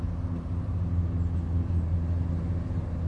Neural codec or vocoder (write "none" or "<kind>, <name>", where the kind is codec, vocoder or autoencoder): none